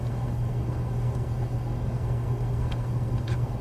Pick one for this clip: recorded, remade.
remade